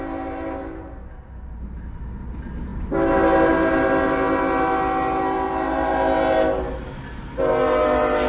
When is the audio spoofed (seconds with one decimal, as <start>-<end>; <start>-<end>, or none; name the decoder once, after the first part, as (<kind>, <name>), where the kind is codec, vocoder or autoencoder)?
none